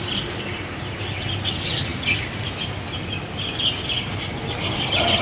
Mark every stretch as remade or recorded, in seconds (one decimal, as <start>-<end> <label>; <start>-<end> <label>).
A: 0.0-5.2 recorded